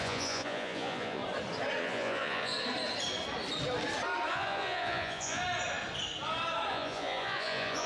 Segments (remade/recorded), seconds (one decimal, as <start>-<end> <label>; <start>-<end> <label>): 0.0-1.2 remade; 1.2-1.8 recorded; 1.8-2.5 remade; 2.5-4.3 recorded; 4.3-5.4 remade; 5.4-6.7 recorded; 6.7-7.9 remade